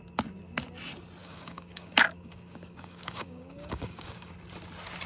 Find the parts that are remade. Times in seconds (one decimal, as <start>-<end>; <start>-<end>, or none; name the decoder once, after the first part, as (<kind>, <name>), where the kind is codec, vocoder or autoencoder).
1.2-4.3 (codec, DAC)